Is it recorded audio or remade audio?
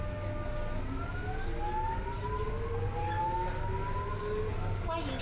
recorded